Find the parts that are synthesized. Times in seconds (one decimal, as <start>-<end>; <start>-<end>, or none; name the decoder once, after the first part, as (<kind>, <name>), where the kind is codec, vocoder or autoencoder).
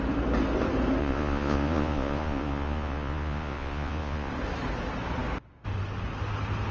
1.0-4.3 (vocoder, Vocos)